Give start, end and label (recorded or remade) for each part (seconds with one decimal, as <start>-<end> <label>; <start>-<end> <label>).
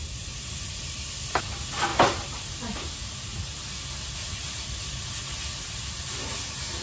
0.0-6.8 recorded